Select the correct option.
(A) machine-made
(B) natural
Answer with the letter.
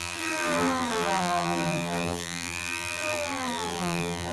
A